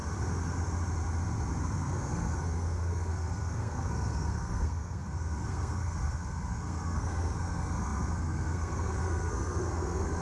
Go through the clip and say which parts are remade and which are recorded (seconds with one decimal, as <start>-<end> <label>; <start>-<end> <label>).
0.0-1.6 recorded; 1.6-10.2 remade